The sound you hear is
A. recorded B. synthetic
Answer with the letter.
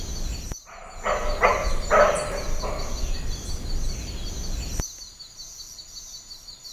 A